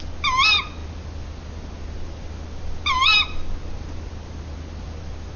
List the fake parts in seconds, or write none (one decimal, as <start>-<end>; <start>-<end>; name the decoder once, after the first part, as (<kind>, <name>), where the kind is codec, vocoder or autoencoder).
none

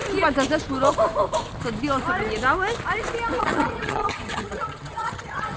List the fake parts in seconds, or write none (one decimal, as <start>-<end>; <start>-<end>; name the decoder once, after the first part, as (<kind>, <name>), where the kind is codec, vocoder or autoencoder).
3.4-5.6 (vocoder, HiFi-GAN)

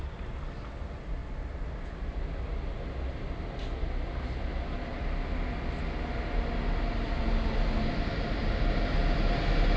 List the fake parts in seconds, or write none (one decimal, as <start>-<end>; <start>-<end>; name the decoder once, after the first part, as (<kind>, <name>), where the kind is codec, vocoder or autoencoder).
none

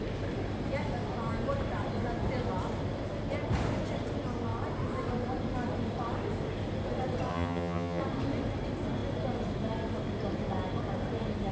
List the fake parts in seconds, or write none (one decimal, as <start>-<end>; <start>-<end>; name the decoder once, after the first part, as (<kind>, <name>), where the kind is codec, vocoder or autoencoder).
7.3-8.0 (vocoder, HiFi-GAN)

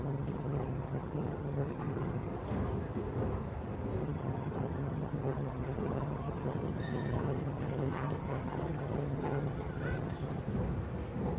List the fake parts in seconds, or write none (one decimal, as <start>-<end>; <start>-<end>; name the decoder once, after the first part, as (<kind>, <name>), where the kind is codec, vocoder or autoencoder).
0.0-2.3 (vocoder, HiFi-GAN); 4.0-10.4

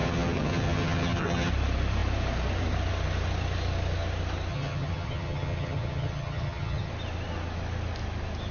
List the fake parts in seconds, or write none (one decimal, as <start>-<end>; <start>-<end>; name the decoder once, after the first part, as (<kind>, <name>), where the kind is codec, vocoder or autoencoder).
0.0-1.5 (vocoder, HiFi-GAN); 4.5-6.9

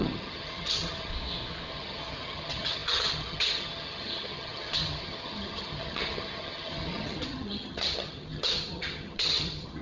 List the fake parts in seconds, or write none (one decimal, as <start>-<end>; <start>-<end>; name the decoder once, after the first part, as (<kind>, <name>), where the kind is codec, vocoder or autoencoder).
0.0-1.1 (vocoder, HiFi-GAN); 1.7-9.8